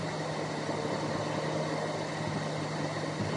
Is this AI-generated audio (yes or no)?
no